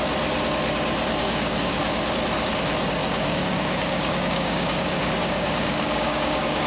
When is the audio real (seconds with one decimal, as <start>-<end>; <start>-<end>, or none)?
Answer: 0.0-1.2; 1.8-3.0